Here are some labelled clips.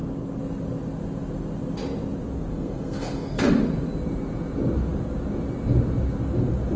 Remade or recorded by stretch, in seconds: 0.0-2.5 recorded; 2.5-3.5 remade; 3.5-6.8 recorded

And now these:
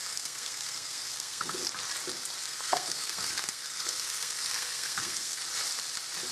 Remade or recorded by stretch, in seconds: 0.0-1.6 remade; 1.6-2.4 recorded; 2.4-5.4 remade; 5.4-6.3 recorded

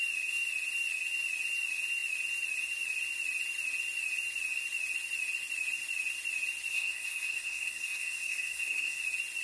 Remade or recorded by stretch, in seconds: 0.0-6.7 recorded; 6.7-9.0 remade; 9.0-9.4 recorded

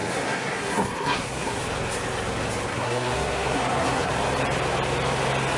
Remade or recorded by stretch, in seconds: 0.0-1.6 remade; 1.6-2.7 recorded; 2.7-4.1 remade; 4.1-5.6 recorded